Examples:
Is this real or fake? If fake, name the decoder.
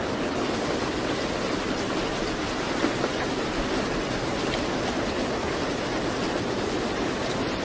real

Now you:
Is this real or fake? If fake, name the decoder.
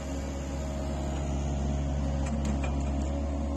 real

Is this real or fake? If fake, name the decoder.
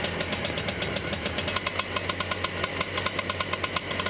real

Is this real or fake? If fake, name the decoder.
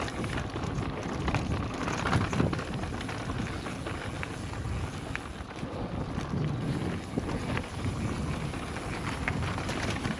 real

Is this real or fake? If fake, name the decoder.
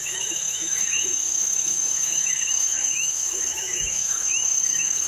fake, autoencoder, DAC-VAE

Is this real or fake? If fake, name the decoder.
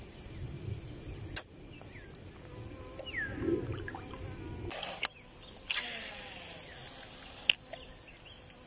real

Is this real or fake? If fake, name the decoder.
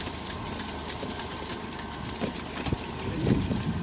fake, vocoder, BigVGAN v2